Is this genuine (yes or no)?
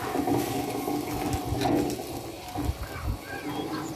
yes